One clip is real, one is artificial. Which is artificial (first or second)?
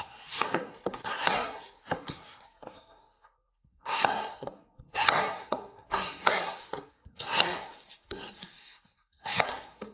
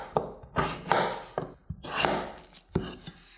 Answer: first